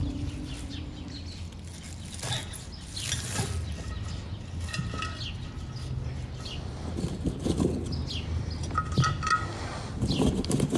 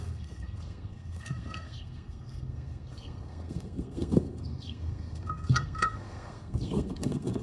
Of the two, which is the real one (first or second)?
first